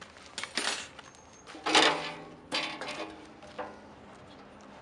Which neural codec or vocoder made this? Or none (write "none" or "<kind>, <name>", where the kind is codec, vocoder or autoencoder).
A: none